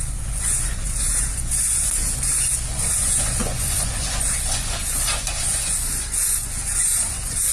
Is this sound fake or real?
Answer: fake